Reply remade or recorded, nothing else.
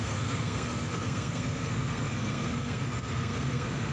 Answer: remade